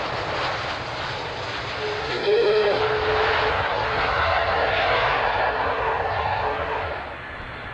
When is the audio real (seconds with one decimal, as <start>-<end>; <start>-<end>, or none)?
0.0-2.0; 2.8-3.5; 6.9-7.7